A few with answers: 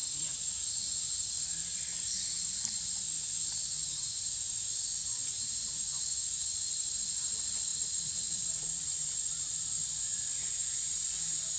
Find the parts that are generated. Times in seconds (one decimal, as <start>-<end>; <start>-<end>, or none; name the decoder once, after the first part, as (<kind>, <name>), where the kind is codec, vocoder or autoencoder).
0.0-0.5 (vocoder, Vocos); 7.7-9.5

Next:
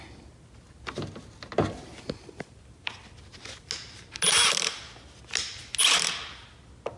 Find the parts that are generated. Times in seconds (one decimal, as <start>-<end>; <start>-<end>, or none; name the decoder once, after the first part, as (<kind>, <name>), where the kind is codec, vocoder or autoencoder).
none

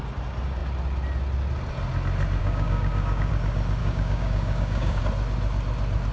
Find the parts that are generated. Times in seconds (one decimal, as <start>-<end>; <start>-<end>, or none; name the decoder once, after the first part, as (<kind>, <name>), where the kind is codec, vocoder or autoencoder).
2.4-3.3 (codec, DAC); 3.8-5.0